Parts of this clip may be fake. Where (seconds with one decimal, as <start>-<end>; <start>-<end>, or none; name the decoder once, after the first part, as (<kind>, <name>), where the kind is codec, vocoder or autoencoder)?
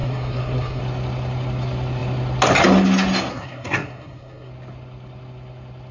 0.0-0.8 (codec, SNAC); 3.3-4.5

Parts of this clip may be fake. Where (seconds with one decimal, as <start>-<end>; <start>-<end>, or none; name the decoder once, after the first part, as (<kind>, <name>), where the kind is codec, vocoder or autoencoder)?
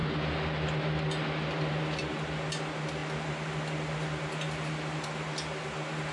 none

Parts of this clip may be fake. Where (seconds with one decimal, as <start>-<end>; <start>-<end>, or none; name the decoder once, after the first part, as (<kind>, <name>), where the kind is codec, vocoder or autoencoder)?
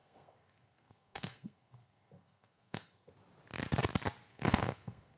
0.0-3.1 (codec, SNAC); 4.3-5.2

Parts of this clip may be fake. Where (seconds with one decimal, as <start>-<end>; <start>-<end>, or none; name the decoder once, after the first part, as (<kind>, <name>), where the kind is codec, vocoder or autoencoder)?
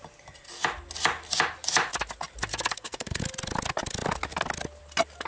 2.5-3.2 (codec, SNAC)